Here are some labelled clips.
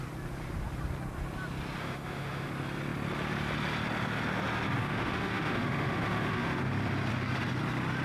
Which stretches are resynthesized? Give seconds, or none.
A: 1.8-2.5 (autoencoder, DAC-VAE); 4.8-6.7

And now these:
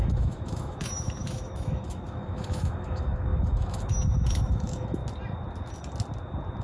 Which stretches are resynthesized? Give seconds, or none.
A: 0.0-5.0 (autoencoder, DAC-VAE)

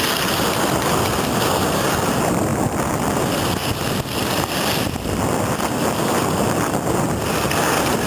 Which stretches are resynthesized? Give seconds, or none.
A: none

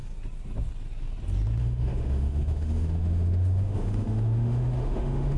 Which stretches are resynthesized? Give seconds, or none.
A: 1.6-5.4 (autoencoder, DAC-VAE)